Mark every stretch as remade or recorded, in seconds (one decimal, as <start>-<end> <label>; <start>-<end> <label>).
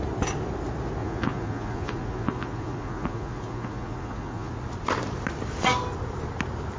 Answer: 0.0-1.0 recorded; 1.0-4.5 remade; 4.5-6.8 recorded